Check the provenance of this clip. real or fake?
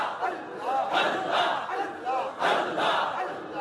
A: real